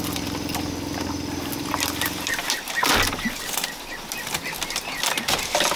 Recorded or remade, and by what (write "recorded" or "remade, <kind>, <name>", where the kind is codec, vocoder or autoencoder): recorded